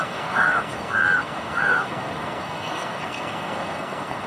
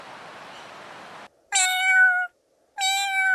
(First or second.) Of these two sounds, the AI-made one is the first